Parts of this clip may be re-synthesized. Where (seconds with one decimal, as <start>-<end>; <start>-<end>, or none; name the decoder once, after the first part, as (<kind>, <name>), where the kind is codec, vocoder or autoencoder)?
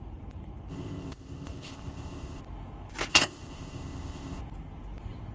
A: 0.7-2.4 (codec, ZipCodec); 3.1-4.4